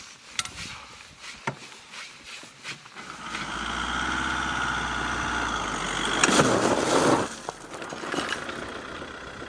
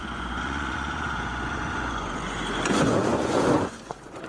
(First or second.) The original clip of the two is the first